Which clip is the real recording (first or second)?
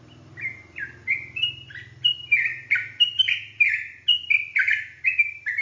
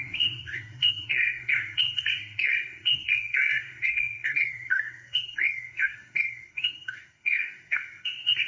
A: first